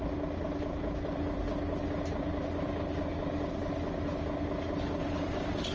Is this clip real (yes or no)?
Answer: yes